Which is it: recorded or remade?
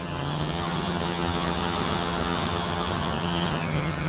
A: remade